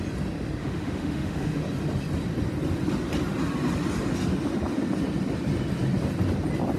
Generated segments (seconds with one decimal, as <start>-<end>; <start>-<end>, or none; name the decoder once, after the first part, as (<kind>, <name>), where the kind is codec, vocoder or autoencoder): 0.6-1.6 (autoencoder, DAC-VAE)